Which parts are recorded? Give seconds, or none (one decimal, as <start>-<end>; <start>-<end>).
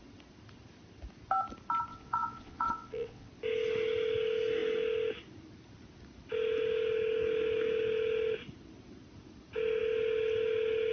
0.0-1.9; 3.3-10.9